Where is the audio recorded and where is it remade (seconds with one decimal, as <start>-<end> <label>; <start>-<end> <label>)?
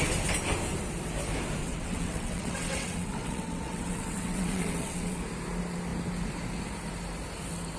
0.0-1.6 recorded; 1.6-5.2 remade; 5.2-7.8 recorded